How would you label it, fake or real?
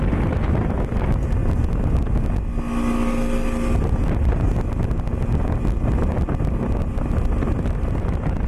real